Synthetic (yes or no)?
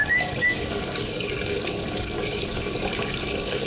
yes